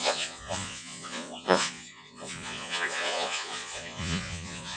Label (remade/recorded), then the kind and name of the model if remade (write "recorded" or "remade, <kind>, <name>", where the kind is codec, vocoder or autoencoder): remade, vocoder, Vocos